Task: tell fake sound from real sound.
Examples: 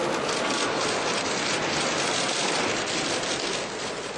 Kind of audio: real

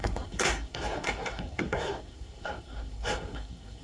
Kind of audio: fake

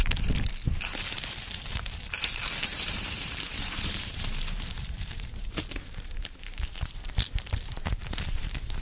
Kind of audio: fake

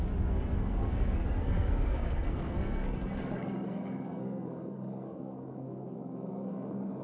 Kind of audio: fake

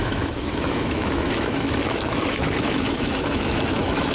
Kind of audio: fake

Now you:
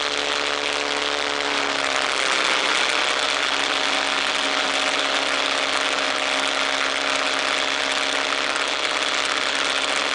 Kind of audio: real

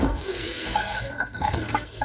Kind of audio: fake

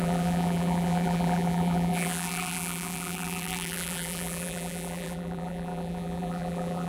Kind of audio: fake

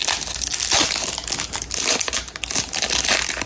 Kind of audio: real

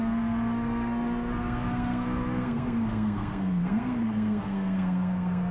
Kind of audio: fake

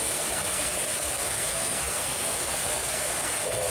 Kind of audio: fake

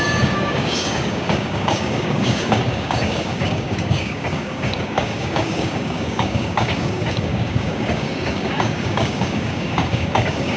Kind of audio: fake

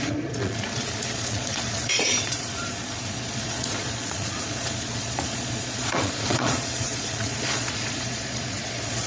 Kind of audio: fake